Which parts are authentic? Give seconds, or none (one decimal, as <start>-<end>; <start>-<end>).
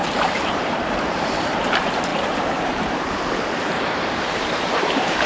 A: none